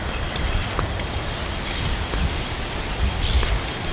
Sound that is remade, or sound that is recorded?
recorded